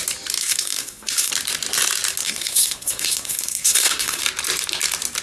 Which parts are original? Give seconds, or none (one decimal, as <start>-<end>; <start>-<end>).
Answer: 0.0-0.4; 1.3-2.2; 4.2-5.2